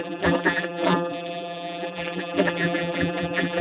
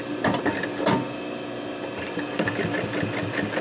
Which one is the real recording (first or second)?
second